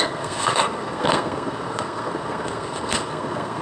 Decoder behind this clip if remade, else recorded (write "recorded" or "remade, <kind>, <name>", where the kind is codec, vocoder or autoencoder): remade, codec, SNAC